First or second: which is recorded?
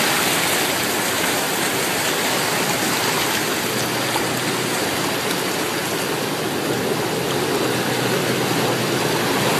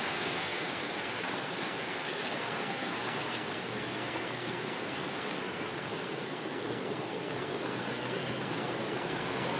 first